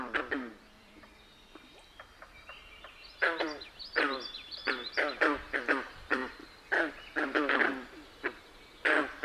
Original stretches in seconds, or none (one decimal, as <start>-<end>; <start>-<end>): none